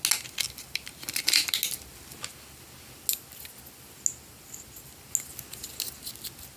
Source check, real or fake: real